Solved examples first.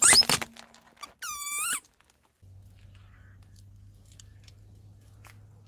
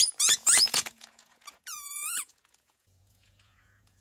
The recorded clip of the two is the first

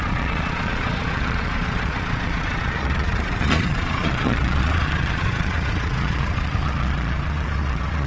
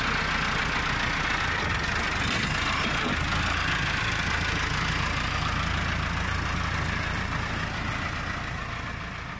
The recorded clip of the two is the second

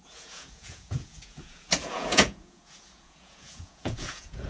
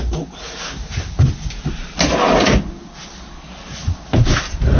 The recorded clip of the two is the second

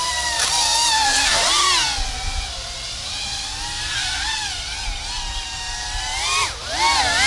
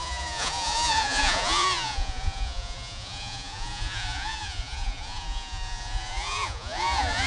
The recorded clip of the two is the first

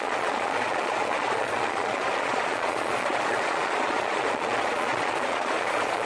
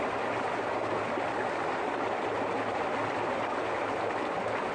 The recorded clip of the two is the second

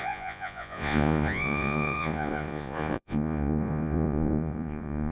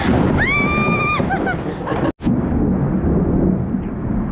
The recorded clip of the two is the second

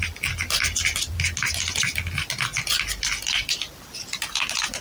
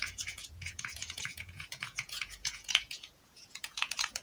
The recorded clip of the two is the first